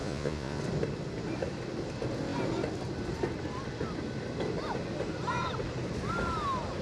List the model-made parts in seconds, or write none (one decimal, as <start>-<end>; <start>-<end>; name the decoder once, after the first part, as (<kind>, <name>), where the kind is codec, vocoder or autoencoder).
0.0-0.6 (vocoder, Vocos)